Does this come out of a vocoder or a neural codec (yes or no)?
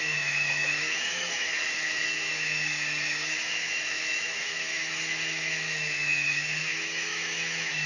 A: yes